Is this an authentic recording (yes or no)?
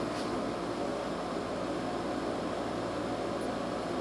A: yes